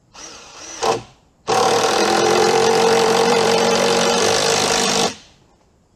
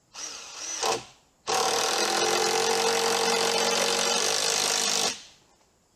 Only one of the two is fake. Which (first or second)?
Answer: first